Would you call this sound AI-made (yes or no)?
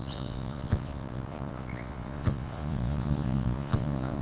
yes